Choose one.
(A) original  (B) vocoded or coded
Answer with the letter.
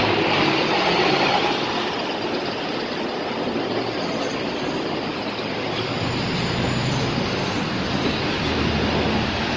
B